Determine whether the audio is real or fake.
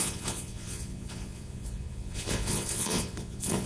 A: fake